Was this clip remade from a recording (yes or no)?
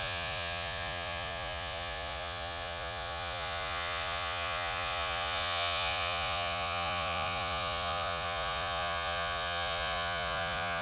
yes